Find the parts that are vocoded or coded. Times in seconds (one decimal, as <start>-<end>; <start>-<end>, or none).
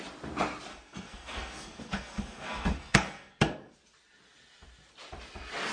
0.7-3.7